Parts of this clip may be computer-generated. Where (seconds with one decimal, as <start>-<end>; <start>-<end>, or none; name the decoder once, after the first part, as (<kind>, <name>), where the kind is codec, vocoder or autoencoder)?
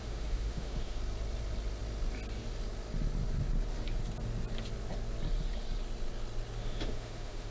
0.0-1.0 (autoencoder, DAC-VAE); 6.6-7.5